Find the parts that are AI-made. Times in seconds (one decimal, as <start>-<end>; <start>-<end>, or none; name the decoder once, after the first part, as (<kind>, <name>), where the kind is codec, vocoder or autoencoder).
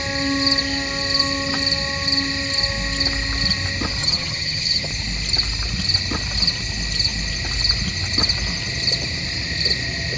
4.0-4.9 (vocoder, HiFi-GAN)